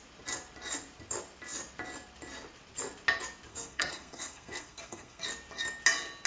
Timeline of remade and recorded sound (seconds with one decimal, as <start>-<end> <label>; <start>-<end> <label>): 0.0-3.5 recorded; 3.5-5.2 remade; 5.2-6.3 recorded